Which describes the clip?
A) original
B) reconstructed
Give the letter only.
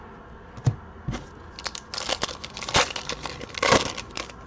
A